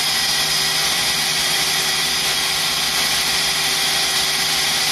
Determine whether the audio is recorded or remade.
recorded